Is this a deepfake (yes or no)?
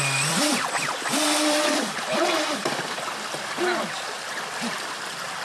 yes